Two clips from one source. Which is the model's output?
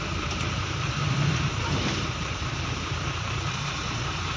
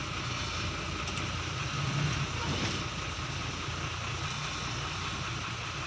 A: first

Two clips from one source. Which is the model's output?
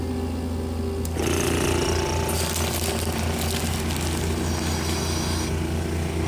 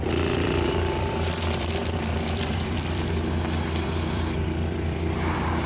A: second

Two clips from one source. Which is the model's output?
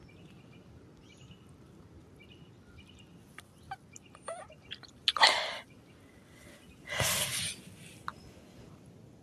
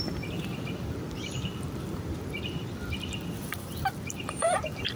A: second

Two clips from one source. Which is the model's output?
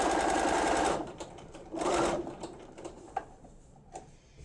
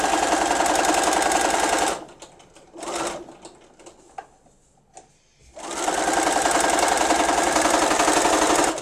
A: first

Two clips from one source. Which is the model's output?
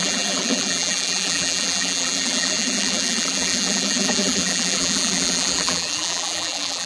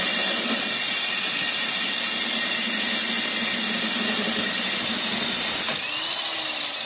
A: first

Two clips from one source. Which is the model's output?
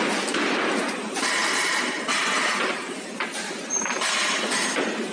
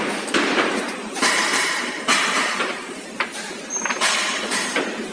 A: second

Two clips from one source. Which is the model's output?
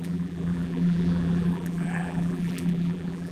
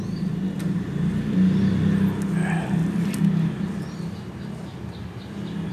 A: first